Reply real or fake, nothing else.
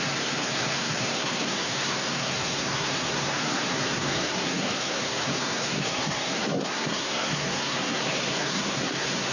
fake